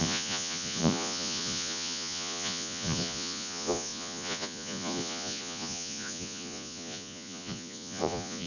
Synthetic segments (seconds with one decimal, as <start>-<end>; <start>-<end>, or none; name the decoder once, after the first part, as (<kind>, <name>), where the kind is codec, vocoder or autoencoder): 0.0-8.5 (vocoder, Vocos)